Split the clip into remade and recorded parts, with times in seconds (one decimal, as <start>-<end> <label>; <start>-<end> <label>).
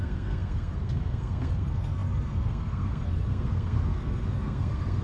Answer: 0.0-5.0 remade